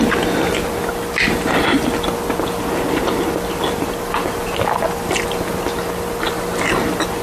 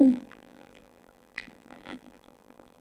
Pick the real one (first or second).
first